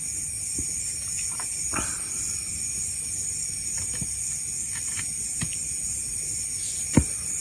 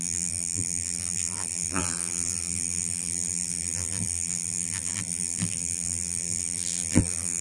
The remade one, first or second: second